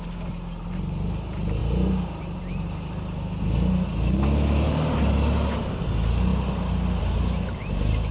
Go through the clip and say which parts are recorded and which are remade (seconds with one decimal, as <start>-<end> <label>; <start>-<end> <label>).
0.0-8.1 recorded